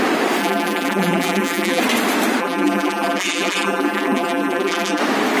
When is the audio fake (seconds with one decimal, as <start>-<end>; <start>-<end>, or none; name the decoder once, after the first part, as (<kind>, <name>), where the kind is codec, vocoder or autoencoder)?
0.4-1.8 (vocoder, BigVGAN v2); 2.4-5.0